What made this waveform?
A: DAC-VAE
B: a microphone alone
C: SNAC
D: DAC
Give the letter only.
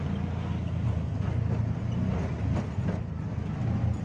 B